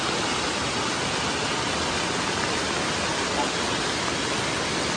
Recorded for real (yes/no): yes